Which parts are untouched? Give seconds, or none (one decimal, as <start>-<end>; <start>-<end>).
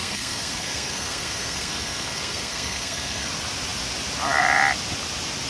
3.3-5.5